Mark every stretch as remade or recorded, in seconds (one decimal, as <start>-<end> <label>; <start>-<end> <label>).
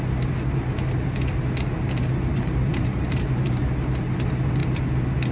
0.0-2.3 recorded; 2.3-3.6 remade; 3.6-5.3 recorded